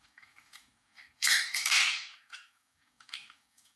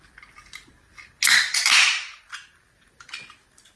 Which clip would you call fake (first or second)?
first